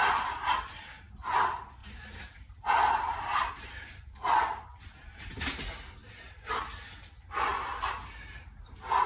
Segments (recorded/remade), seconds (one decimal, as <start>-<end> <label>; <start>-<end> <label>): 0.0-1.8 recorded; 1.8-5.3 remade; 5.3-6.0 recorded; 6.0-6.6 remade; 6.6-9.1 recorded